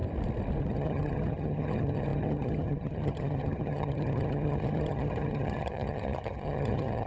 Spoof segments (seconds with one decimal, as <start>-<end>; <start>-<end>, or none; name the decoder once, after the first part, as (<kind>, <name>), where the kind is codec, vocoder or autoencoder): 0.6-7.1 (vocoder, HiFi-GAN)